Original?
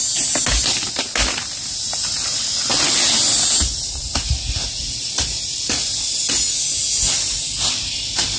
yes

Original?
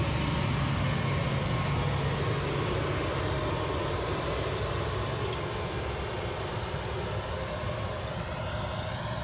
yes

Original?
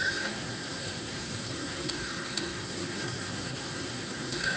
no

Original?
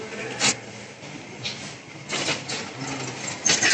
yes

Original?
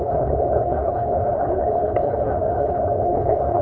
no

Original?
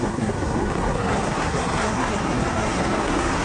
no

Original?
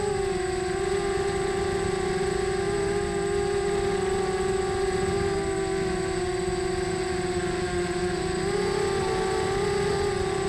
yes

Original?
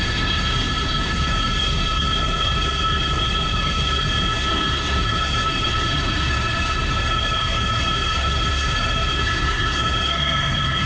no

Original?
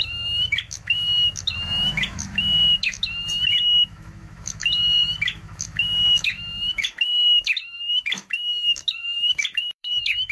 no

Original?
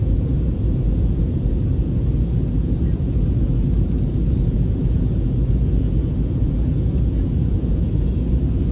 no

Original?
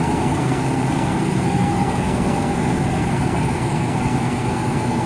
no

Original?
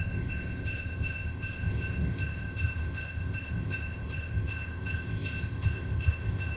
no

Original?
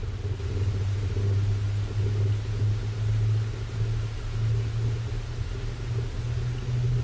yes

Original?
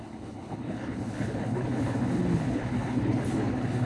no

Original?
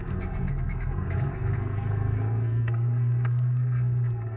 no